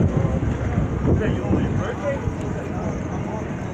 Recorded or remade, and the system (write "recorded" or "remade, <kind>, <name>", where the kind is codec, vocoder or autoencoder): recorded